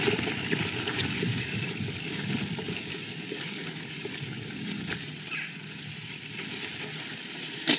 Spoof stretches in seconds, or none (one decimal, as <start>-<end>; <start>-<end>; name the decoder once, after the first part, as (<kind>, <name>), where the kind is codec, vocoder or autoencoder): 0.9-5.1 (codec, DAC)